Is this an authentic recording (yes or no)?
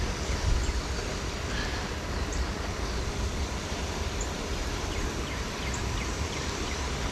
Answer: yes